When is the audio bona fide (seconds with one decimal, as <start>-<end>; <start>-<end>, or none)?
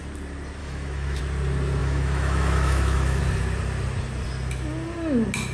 0.0-0.6; 1.2-1.8; 3.2-5.5